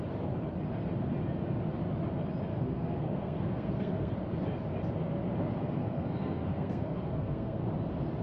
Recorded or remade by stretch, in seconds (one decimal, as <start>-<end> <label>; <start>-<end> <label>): 0.0-2.5 recorded; 2.5-4.1 remade; 4.1-5.6 recorded; 5.6-7.6 remade; 7.6-8.2 recorded